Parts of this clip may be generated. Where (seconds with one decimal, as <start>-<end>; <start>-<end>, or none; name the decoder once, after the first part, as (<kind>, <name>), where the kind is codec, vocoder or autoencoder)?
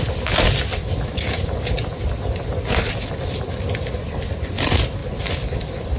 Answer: 0.7-3.1 (vocoder, BigVGAN v2); 5.0-6.0